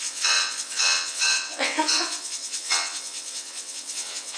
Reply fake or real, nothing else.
fake